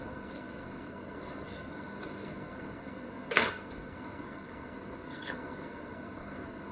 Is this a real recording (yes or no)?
no